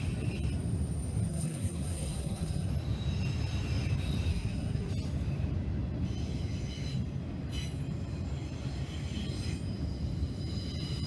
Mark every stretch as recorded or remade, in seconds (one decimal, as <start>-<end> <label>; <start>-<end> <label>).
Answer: 0.0-1.3 recorded; 1.3-2.7 remade; 2.7-4.3 recorded; 4.3-4.9 remade; 4.9-11.1 recorded